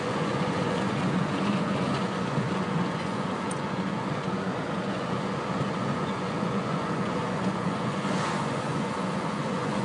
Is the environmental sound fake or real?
fake